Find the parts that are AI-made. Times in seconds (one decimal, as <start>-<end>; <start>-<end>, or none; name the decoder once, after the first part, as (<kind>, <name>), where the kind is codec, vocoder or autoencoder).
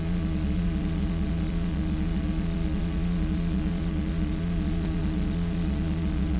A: 0.0-6.4 (vocoder, Vocos)